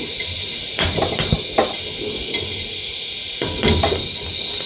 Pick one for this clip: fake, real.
real